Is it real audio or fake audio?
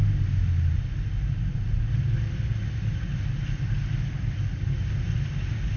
real